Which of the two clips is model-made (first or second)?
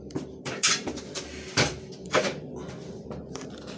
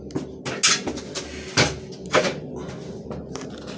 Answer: first